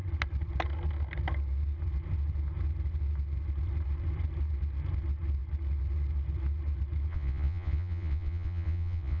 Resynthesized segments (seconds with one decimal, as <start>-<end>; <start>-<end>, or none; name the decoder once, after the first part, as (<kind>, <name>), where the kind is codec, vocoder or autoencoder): 7.1-9.2 (vocoder, Vocos)